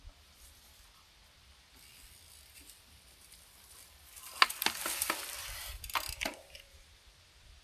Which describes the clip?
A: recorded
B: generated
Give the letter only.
A